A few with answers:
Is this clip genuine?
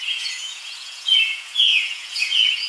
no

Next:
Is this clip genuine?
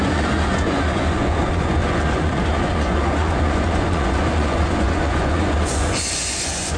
no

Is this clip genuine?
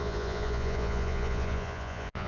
no